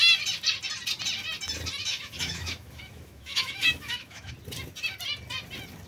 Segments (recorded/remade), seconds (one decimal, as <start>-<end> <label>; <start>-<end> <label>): 0.0-1.8 recorded; 1.8-4.3 remade; 4.3-5.9 recorded